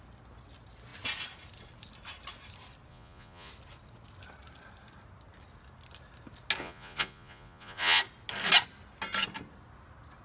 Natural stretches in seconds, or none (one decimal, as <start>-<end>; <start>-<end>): 0.0-2.9; 3.5-6.6; 8.0-10.2